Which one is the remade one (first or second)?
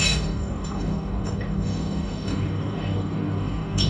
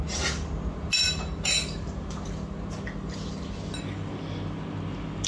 first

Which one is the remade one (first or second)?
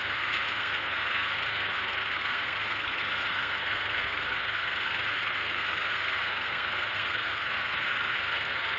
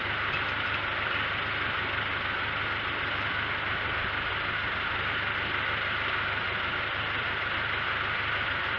first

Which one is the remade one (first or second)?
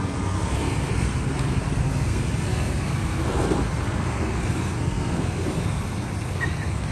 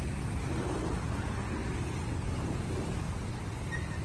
first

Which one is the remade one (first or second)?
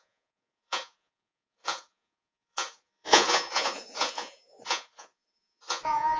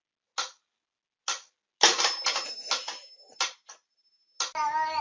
first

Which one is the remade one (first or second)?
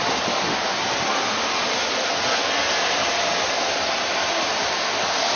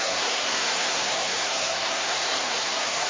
second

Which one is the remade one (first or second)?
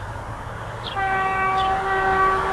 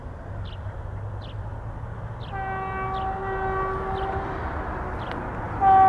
first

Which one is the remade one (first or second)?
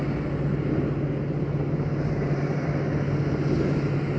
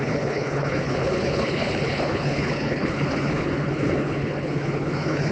second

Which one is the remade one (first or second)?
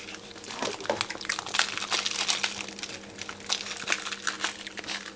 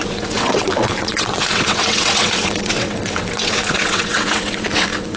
second